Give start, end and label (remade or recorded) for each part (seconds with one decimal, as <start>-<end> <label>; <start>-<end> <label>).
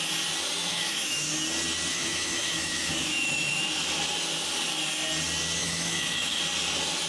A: 0.0-0.7 recorded; 0.7-1.3 remade; 1.3-1.9 recorded; 1.9-3.7 remade; 3.7-5.6 recorded; 5.6-6.4 remade; 6.4-7.1 recorded